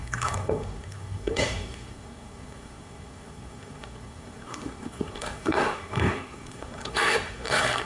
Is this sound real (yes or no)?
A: no